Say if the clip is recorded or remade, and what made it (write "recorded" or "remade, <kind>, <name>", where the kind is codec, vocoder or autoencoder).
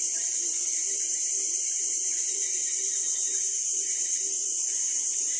remade, vocoder, BigVGAN v2